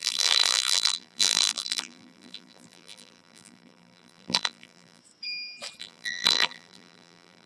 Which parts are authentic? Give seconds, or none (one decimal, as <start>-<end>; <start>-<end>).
5.0-5.8